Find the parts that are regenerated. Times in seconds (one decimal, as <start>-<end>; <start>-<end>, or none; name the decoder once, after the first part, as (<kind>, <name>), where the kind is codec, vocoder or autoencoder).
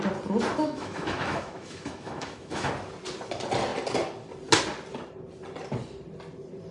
0.6-2.7 (autoencoder, DAC-VAE)